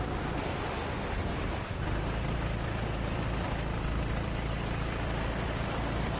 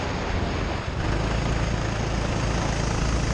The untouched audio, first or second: second